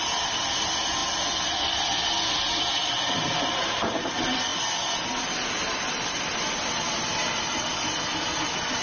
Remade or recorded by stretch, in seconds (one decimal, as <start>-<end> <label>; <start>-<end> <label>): 0.0-8.8 recorded